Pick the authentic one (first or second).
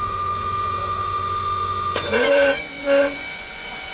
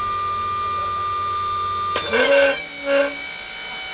second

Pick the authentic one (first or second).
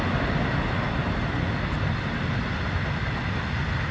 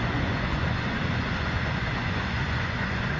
first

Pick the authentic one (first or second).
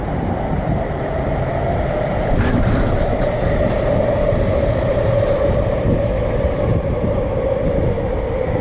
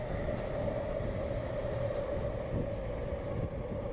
second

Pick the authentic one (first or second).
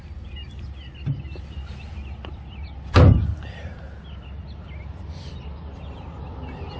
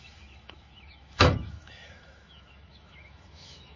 first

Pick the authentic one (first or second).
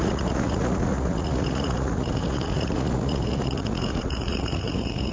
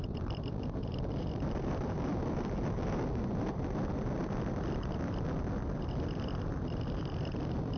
second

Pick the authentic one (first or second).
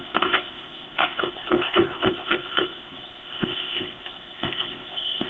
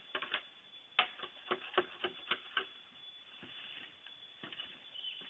second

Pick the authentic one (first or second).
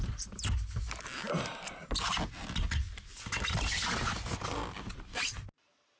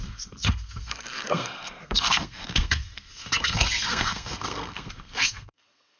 first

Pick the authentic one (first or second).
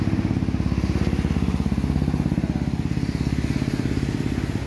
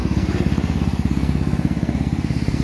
first